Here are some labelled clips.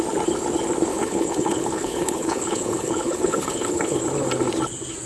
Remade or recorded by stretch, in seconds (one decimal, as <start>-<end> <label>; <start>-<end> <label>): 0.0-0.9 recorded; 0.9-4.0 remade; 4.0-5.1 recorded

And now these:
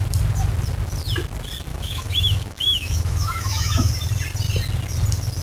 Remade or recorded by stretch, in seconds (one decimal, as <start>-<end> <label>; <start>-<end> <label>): 0.0-1.7 recorded; 1.7-3.9 remade; 3.9-5.4 recorded

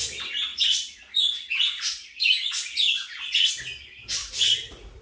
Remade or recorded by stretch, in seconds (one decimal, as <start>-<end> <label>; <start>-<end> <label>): 0.0-0.5 recorded; 0.5-3.5 remade; 3.5-4.2 recorded; 4.2-5.0 remade

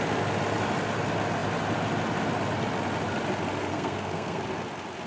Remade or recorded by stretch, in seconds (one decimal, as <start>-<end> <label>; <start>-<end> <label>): 0.0-3.7 recorded; 3.7-4.4 remade; 4.4-5.1 recorded

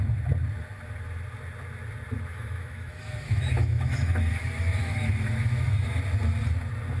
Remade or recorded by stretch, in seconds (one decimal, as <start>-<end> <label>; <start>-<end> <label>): 0.0-2.3 recorded; 2.3-6.0 remade; 6.0-7.0 recorded